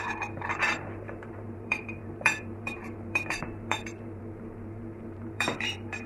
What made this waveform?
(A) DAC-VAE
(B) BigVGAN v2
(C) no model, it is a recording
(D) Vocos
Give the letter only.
B